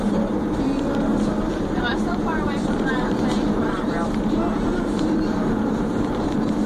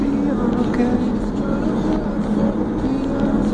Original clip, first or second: second